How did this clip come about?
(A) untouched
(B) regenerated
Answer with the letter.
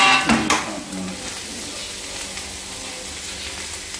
A